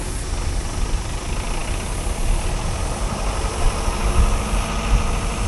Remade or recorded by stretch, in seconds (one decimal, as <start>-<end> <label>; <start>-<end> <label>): 0.0-5.5 recorded